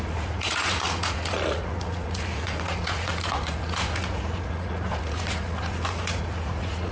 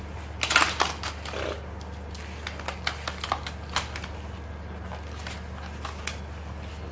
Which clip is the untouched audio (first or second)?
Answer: second